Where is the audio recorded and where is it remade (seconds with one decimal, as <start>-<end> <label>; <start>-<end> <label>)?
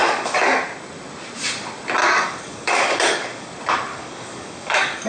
0.0-0.6 remade; 0.6-2.0 recorded; 2.0-3.5 remade; 3.5-3.9 recorded; 3.9-5.1 remade